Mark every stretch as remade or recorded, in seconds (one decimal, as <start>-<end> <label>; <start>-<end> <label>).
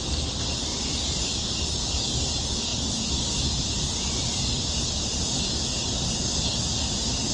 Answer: 0.0-0.7 recorded; 0.7-1.6 remade; 1.6-2.7 recorded; 2.7-5.4 remade; 5.4-7.3 recorded